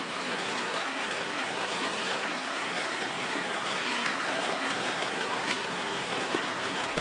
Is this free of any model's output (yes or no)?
no